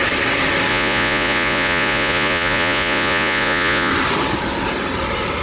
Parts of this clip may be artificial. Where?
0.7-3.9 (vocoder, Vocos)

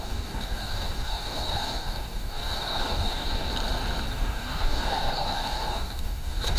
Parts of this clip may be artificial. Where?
0.0-3.5 (codec, DAC); 4.1-6.6